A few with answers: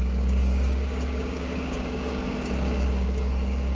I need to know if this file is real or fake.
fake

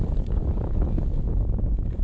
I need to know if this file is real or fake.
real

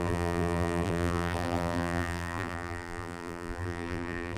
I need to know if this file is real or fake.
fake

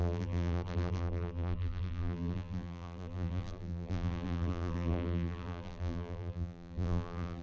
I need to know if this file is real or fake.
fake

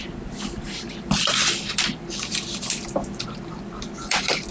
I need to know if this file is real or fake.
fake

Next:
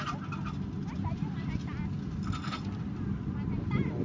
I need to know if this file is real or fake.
real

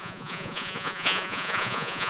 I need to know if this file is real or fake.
fake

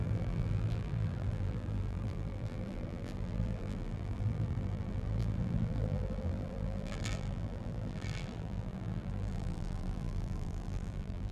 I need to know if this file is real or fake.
fake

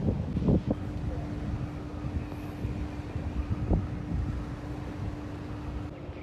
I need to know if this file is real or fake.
real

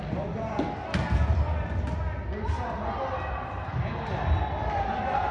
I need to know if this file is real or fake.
real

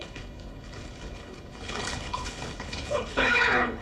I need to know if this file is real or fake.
fake